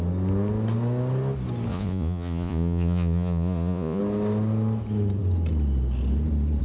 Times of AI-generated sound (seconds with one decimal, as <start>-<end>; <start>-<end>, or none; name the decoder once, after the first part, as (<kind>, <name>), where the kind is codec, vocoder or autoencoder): 1.7-4.0 (vocoder, Vocos)